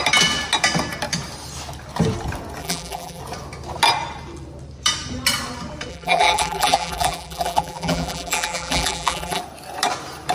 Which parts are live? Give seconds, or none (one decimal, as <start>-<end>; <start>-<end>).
0.0-2.6; 3.2-5.9; 9.4-10.3